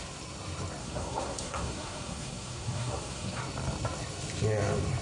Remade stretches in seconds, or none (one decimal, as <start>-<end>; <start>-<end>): 0.8-3.4